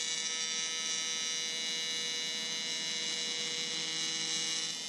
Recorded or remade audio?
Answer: recorded